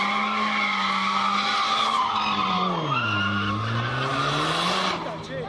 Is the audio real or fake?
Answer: real